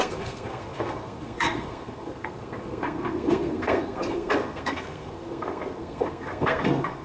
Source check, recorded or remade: remade